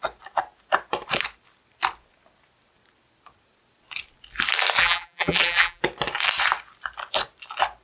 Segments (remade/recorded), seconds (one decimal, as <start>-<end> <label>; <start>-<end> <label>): 0.0-4.8 recorded; 4.8-5.8 remade; 5.8-7.8 recorded